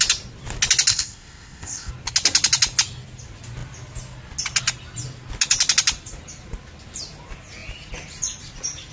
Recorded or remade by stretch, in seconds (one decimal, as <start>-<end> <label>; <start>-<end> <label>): 0.0-0.9 recorded; 0.9-1.9 remade; 1.9-8.9 recorded